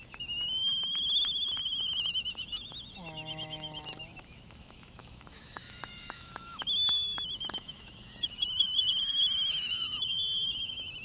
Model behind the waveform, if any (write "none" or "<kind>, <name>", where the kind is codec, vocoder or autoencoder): autoencoder, DAC-VAE